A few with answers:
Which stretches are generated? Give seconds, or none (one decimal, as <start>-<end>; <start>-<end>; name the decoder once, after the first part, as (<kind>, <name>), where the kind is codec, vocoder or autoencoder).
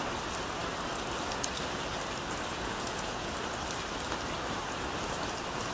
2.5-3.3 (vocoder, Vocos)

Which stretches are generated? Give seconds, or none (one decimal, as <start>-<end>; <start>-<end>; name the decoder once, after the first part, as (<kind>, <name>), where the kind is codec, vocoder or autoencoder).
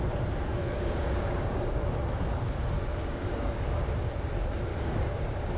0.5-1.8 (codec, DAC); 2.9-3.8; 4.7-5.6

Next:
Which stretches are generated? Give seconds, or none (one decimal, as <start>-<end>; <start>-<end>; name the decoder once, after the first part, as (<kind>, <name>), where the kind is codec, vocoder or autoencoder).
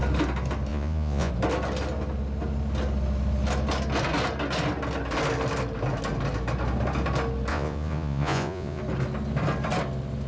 0.7-1.3 (vocoder, Vocos); 7.5-8.8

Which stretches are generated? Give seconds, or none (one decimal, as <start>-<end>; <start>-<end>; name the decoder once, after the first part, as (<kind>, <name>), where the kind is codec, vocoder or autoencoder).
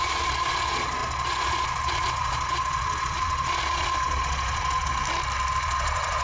0.0-5.0 (vocoder, Vocos); 5.6-6.2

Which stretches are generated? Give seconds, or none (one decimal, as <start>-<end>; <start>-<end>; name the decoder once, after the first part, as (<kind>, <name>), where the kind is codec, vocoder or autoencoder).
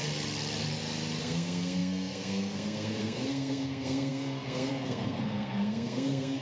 1.2-6.4 (codec, SNAC)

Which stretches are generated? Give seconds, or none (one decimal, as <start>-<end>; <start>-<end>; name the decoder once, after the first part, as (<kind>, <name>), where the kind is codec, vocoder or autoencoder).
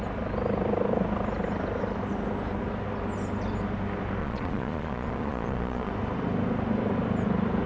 4.2-5.9 (vocoder, Vocos)